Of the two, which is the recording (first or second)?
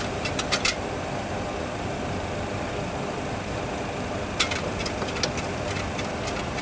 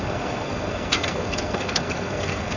first